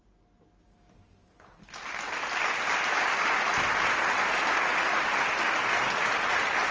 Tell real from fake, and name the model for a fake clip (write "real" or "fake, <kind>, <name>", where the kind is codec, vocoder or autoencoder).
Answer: real